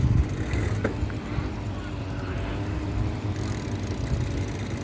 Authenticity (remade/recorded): recorded